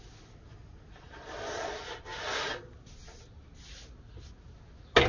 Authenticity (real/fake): real